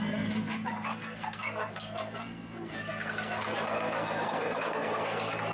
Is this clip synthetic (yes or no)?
yes